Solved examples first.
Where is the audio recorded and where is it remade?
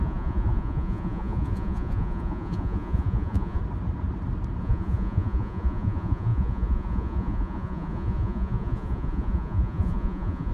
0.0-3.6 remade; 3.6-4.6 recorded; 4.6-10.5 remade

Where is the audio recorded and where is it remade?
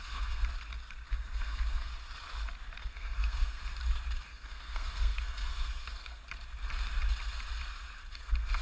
0.0-0.4 remade; 0.4-1.1 recorded; 1.1-1.9 remade; 1.9-2.8 recorded; 2.8-3.6 remade; 3.6-4.3 recorded; 4.3-6.2 remade; 6.2-8.1 recorded; 8.1-8.6 remade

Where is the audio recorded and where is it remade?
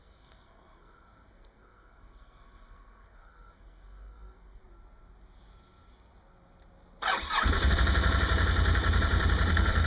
0.0-4.6 remade; 4.6-9.5 recorded; 9.5-9.9 remade